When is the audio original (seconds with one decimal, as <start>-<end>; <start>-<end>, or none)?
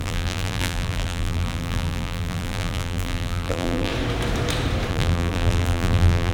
3.9-4.9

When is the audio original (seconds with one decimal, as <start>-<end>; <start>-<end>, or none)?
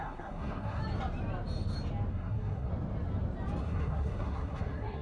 0.8-2.1; 2.7-3.6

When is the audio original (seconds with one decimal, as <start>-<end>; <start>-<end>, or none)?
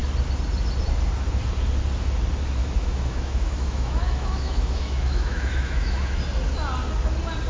0.0-2.6; 6.2-7.5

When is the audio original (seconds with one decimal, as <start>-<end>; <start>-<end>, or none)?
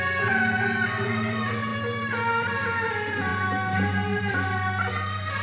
none